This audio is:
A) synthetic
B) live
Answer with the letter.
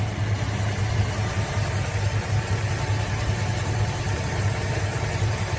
B